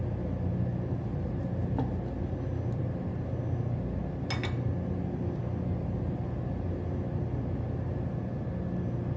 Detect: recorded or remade recorded